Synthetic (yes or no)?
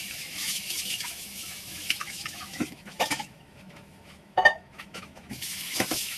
yes